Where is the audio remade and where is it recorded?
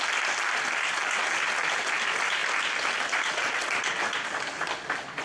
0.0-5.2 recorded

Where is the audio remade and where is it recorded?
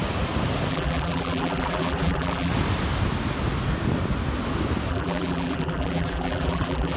0.0-0.7 recorded; 0.7-2.5 remade; 2.5-4.9 recorded; 4.9-7.0 remade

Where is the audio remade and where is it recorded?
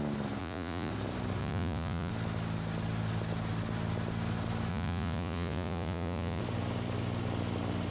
0.0-0.4 recorded; 0.4-0.9 remade; 0.9-1.4 recorded; 1.4-2.1 remade; 2.1-4.7 recorded; 4.7-6.4 remade; 6.4-7.9 recorded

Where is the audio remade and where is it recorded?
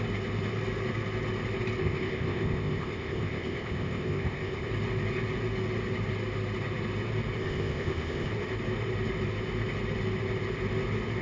0.0-1.8 recorded; 1.8-4.7 remade; 4.7-7.4 recorded; 7.4-8.3 remade; 8.3-11.2 recorded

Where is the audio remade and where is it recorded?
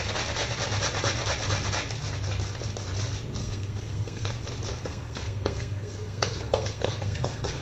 0.0-3.4 recorded; 3.4-4.3 remade; 4.3-4.7 recorded; 4.7-7.6 remade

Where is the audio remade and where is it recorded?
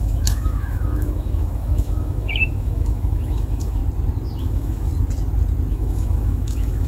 0.0-3.8 remade; 3.8-4.4 recorded; 4.4-4.9 remade; 4.9-5.7 recorded; 5.7-6.9 remade